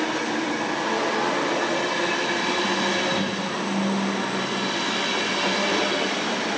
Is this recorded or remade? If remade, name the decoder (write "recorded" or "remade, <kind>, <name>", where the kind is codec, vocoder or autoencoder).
recorded